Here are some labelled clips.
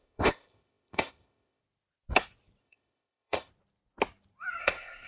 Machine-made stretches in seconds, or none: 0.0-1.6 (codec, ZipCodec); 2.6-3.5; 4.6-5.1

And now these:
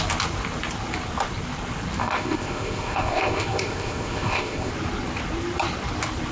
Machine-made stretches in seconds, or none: 2.0-4.7 (codec, ZipCodec)